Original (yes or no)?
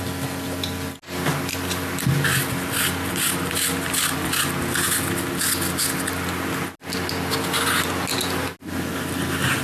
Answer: yes